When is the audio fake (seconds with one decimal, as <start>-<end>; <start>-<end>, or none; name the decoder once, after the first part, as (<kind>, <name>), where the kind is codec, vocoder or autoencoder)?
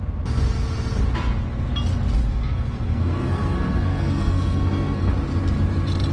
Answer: 2.3-5.1 (codec, SNAC)